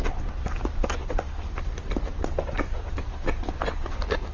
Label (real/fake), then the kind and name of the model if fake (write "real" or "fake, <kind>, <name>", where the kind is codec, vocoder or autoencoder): real